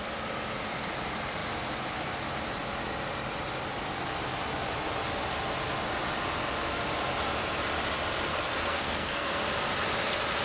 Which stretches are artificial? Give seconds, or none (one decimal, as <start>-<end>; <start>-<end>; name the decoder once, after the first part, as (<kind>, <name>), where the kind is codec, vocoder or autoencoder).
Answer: 8.3-9.4 (codec, SNAC)